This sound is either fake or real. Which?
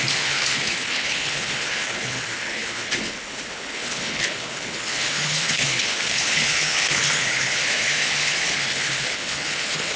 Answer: fake